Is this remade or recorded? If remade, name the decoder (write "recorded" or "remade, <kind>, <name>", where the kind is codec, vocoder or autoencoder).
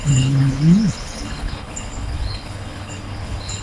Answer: remade, codec, HILCodec